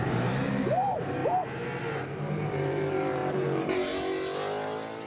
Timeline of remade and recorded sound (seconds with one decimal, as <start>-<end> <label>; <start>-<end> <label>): 0.0-1.2 remade; 1.2-1.8 recorded; 1.8-3.2 remade; 3.2-5.1 recorded